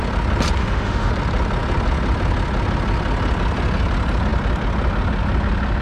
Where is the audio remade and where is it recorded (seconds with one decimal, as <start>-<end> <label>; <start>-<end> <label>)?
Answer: 0.0-0.6 recorded; 0.6-1.1 remade; 1.1-5.8 recorded